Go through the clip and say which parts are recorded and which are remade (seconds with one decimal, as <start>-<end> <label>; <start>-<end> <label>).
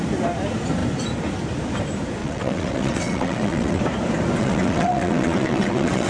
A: 0.0-2.2 recorded; 2.2-3.8 remade; 3.8-4.4 recorded; 4.4-6.1 remade